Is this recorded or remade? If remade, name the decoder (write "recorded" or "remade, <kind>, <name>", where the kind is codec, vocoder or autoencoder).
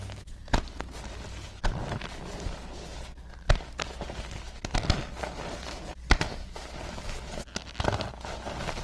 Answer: recorded